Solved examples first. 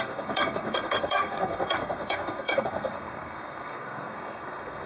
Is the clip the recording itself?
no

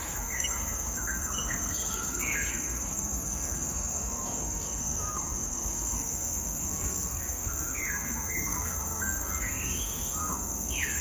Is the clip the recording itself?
no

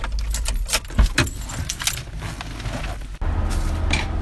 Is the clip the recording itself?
yes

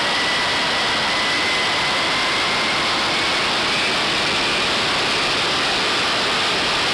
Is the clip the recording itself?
yes